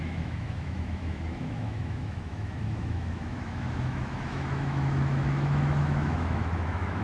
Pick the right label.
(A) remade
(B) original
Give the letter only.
A